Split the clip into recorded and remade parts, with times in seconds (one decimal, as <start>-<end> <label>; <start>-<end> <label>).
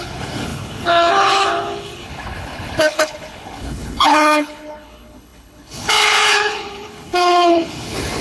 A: 0.0-8.2 remade